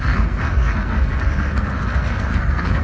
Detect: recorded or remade remade